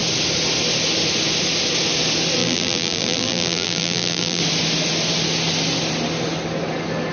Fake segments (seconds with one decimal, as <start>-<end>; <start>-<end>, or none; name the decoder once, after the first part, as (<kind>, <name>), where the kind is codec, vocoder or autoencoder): 2.4-4.4 (vocoder, BigVGAN v2)